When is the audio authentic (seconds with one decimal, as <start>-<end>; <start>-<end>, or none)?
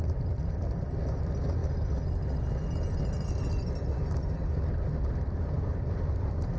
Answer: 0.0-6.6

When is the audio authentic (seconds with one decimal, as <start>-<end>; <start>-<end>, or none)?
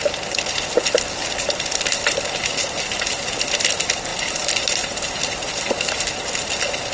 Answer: 0.0-4.1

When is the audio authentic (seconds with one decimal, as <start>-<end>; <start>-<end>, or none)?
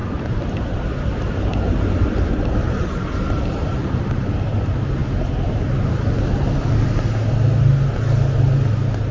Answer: 4.3-9.1